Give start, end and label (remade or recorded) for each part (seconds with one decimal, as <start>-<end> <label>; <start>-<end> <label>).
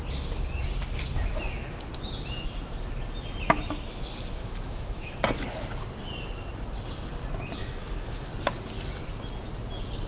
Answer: 0.0-4.4 recorded; 4.4-5.1 remade; 5.1-7.6 recorded; 7.6-8.3 remade; 8.3-10.1 recorded